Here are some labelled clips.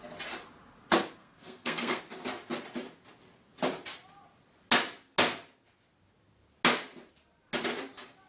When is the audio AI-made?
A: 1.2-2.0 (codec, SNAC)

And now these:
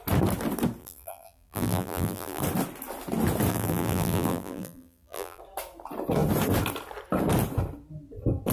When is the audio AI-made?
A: 0.8-2.4 (vocoder, BigVGAN v2); 3.5-5.4

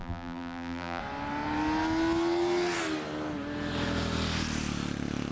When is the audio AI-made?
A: 0.0-1.0 (vocoder, BigVGAN v2)

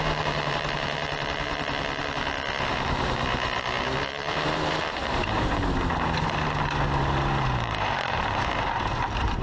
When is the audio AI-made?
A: 0.0-5.5 (vocoder, BigVGAN v2); 8.1-9.4

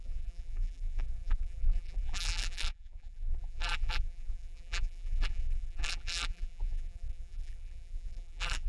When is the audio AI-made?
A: 0.0-8.7 (vocoder, BigVGAN v2)

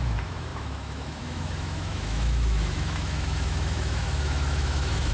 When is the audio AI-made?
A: 0.0-5.1 (autoencoder, DAC-VAE)